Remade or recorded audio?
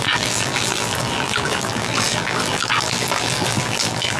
remade